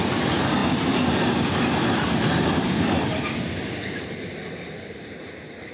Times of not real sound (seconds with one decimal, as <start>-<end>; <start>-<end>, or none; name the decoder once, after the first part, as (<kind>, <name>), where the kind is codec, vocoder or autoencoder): none